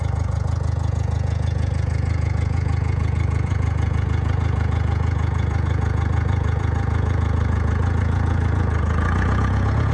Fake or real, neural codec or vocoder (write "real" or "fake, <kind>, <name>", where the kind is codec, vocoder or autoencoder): fake, vocoder, Vocos